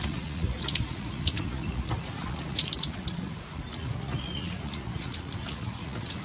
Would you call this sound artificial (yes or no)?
yes